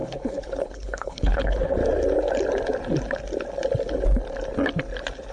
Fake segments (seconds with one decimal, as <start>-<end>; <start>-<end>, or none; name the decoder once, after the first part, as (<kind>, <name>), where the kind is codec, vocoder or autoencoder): 0.0-1.8 (codec, HILCodec)